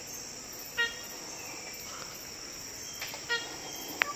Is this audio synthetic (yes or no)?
no